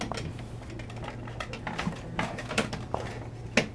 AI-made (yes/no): no